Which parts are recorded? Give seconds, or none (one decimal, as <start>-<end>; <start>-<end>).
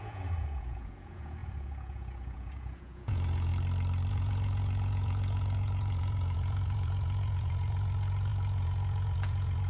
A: 3.5-4.1